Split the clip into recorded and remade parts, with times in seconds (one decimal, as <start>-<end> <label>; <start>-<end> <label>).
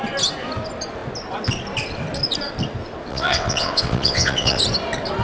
0.0-3.1 recorded; 3.1-4.6 remade; 4.6-5.2 recorded